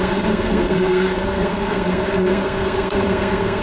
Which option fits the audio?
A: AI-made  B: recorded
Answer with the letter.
A